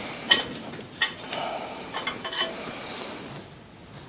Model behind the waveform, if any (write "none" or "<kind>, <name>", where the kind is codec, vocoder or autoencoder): none